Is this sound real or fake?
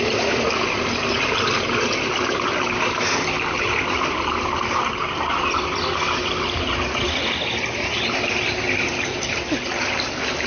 real